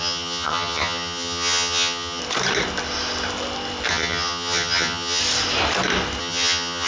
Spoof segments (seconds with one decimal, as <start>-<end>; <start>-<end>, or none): 0.0-2.2; 3.9-5.2; 6.2-6.9

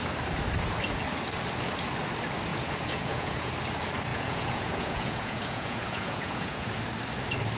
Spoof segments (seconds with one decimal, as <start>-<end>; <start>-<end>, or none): 2.5-3.5; 4.1-6.7

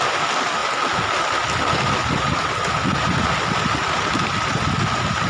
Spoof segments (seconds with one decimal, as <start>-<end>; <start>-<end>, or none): 0.0-0.6; 1.2-5.3

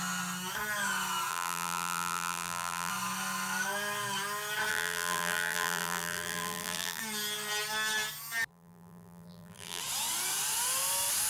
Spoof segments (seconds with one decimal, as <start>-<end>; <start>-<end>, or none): 1.3-2.9; 4.7-7.0; 8.5-9.8

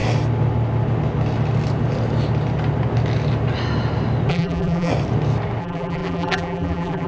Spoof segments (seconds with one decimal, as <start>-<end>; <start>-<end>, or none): 4.3-4.9; 5.6-7.1

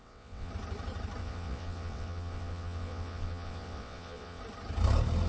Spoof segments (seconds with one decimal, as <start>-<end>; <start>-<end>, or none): 0.0-0.5; 1.2-4.4

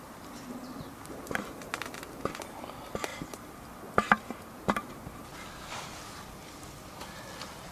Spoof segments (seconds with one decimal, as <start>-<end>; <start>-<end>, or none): none